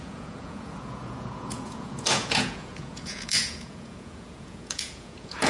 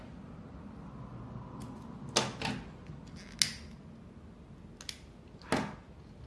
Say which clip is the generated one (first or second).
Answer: first